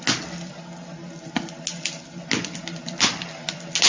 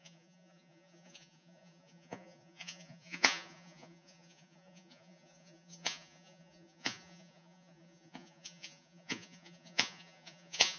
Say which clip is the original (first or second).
first